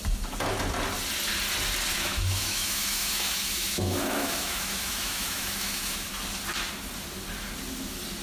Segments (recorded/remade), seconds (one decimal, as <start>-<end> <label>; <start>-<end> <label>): 0.0-1.9 recorded; 1.9-6.1 remade; 6.1-8.2 recorded